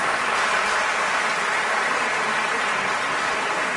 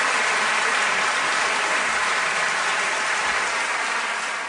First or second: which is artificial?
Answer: second